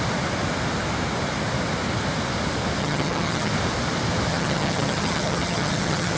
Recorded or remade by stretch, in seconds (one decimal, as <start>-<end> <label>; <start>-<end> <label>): 0.0-2.8 recorded; 2.8-3.5 remade; 3.5-4.3 recorded; 4.3-6.2 remade